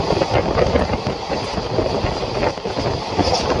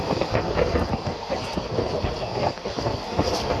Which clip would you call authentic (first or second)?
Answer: first